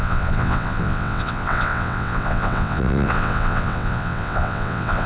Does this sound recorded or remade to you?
remade